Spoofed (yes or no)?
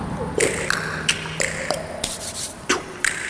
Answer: no